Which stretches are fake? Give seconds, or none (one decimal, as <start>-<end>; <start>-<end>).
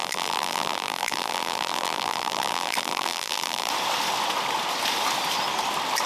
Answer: 0.0-3.7